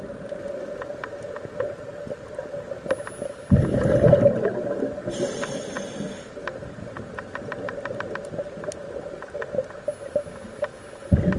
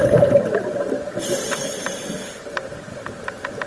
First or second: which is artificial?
second